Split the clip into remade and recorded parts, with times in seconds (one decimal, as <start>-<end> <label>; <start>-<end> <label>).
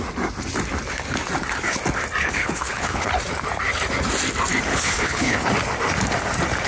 0.0-2.2 recorded; 2.2-3.1 remade; 3.1-4.7 recorded; 4.7-5.5 remade; 5.5-6.7 recorded